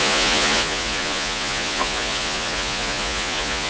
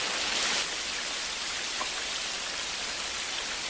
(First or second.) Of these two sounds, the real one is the second